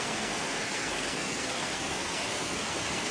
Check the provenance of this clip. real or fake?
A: fake